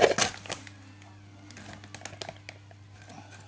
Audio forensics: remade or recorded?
recorded